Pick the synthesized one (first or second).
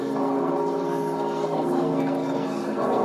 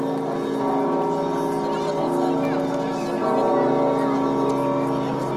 first